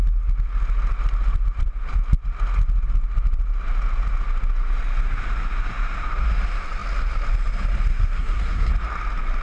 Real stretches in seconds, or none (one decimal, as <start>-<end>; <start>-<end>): 0.0-7.9; 8.7-9.4